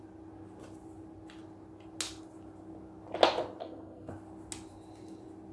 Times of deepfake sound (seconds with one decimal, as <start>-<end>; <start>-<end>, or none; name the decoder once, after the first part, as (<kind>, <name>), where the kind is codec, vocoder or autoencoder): 3.6-4.1 (codec, SNAC)